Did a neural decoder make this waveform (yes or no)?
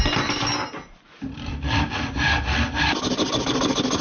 no